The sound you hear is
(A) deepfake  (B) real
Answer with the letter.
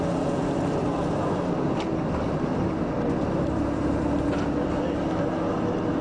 B